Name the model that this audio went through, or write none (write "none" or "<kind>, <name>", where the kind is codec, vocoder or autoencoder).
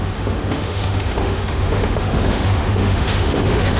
autoencoder, DAC-VAE